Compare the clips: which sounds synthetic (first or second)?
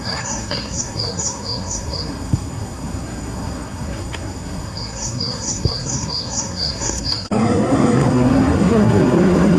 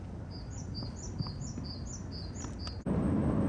first